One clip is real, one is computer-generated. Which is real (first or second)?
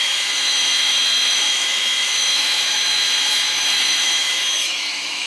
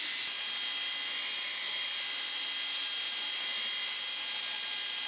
second